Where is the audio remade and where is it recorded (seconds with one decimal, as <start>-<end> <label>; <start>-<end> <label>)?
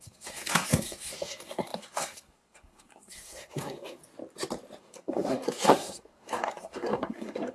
0.0-4.0 remade; 4.0-4.8 recorded; 4.8-7.5 remade